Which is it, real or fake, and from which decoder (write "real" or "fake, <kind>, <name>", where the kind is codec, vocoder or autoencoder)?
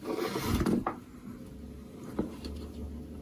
real